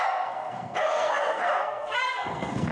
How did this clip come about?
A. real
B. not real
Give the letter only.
B